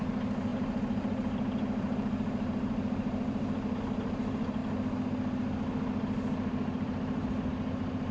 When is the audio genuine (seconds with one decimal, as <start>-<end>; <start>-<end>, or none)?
4.6-8.1